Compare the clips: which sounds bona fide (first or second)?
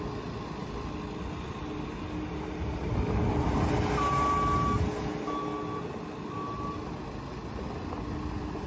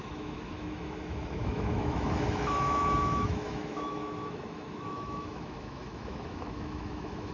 first